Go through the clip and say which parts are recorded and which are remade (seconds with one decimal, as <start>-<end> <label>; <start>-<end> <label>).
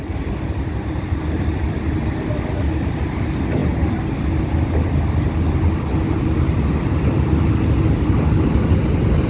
0.0-9.3 recorded